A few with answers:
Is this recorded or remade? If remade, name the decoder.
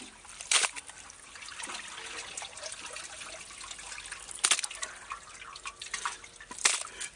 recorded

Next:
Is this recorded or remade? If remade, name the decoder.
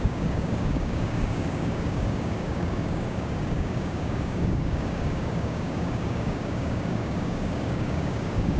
remade, codec, DAC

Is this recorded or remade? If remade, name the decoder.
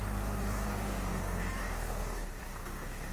remade, codec, DAC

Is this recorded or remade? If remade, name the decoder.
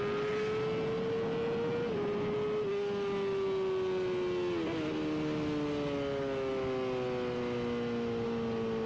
recorded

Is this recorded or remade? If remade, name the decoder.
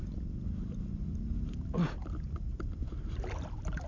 recorded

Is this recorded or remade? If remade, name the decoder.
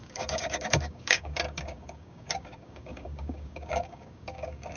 remade, codec, DAC